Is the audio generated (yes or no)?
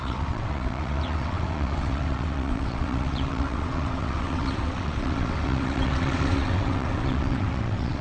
yes